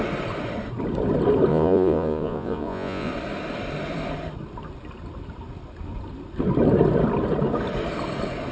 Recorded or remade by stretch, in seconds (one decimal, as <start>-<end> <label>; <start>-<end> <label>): 0.0-1.5 recorded; 1.5-3.1 remade; 3.1-8.5 recorded